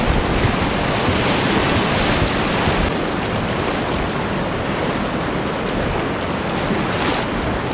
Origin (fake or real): real